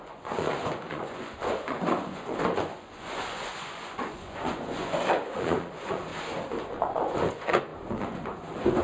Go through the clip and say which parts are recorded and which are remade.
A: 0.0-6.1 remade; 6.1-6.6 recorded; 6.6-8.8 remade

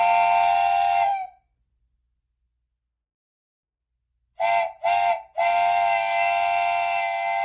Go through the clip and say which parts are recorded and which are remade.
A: 0.0-7.4 recorded

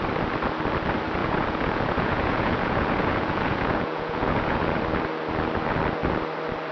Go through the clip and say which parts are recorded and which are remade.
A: 0.0-1.2 recorded; 1.2-4.8 remade; 4.8-6.7 recorded

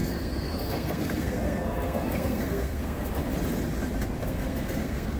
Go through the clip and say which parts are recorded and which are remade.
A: 0.0-3.1 remade; 3.1-4.2 recorded; 4.2-5.2 remade

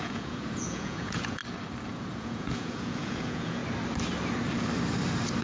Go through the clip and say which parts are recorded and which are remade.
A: 0.0-1.4 remade; 1.4-2.2 recorded; 2.2-3.6 remade; 3.6-5.4 recorded

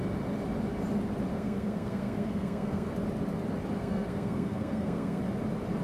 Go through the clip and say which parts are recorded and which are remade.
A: 0.0-1.3 recorded; 1.3-2.9 remade; 2.9-3.8 recorded; 3.8-5.2 remade; 5.2-5.8 recorded